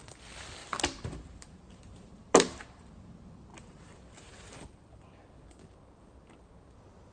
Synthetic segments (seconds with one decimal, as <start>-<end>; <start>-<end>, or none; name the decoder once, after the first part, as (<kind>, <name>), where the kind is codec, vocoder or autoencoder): 0.6-3.1 (vocoder, BigVGAN v2); 3.5-4.6